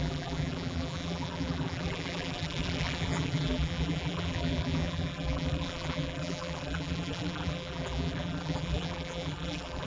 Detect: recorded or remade remade